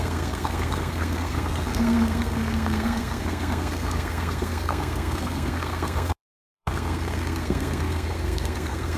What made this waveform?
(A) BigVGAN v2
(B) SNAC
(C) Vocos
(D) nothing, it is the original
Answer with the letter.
B